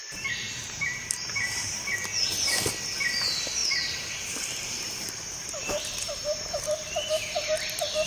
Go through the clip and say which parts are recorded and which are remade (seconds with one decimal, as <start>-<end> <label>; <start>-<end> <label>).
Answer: 0.0-1.7 remade; 1.7-3.6 recorded; 3.6-7.3 remade; 7.3-8.1 recorded